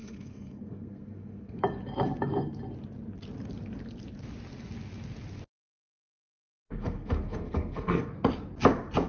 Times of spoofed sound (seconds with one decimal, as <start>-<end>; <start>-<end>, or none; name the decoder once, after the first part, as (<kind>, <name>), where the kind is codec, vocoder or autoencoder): 0.0-1.6 (codec, SNAC); 5.5-8.1

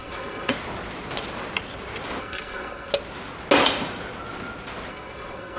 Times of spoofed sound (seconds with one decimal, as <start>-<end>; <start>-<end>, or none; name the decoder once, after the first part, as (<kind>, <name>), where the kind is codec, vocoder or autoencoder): 0.0-0.5 (codec, SNAC); 2.2-2.9; 4.9-5.6

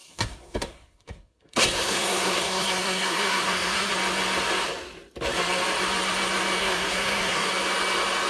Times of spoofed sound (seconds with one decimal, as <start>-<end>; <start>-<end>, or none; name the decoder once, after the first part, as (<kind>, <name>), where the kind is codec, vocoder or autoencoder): 0.0-3.9 (codec, SNAC); 6.6-7.5

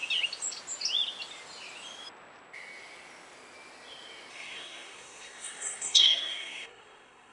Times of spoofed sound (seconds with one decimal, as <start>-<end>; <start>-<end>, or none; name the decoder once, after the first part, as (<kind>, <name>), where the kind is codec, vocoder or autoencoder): 4.3-7.3 (codec, SNAC)

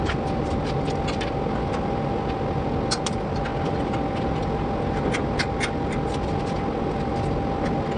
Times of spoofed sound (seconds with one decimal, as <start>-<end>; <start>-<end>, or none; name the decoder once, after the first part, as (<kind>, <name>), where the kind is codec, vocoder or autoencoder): none

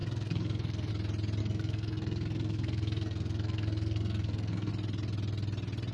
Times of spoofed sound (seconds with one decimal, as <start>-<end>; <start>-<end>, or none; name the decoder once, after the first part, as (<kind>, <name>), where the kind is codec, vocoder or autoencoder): 0.0-0.9 (codec, SNAC); 1.4-4.7

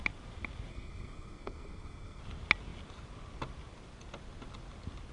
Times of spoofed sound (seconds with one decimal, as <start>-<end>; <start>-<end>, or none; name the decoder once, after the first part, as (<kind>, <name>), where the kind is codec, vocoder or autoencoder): 0.7-2.2 (codec, SNAC)

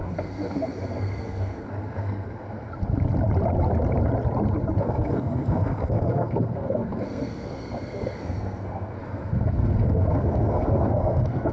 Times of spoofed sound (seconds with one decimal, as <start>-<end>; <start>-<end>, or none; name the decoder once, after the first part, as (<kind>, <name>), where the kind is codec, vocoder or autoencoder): 0.0-2.7 (codec, SNAC); 4.8-11.5